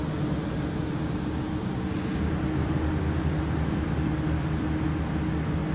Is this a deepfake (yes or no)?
no